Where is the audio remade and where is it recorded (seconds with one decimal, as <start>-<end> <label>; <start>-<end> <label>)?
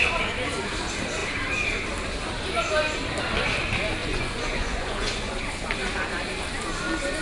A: 0.0-4.0 recorded; 4.0-5.4 remade; 5.4-7.2 recorded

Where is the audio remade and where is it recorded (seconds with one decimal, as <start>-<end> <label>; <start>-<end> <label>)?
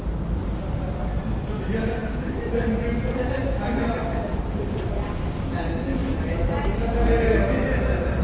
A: 0.0-8.2 recorded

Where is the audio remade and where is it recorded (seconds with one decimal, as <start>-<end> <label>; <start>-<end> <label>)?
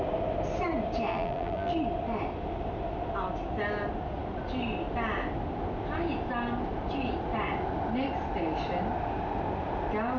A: 0.0-1.1 recorded; 1.1-1.7 remade; 1.7-10.2 recorded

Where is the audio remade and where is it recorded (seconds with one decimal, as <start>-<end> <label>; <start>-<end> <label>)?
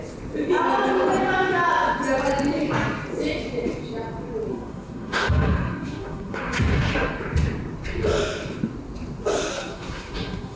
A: 0.0-4.5 recorded; 4.5-7.2 remade; 7.2-9.5 recorded; 9.5-10.6 remade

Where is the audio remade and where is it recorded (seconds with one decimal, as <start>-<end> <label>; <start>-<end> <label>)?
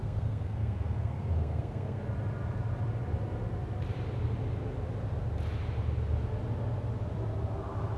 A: 0.0-2.0 remade; 2.0-8.0 recorded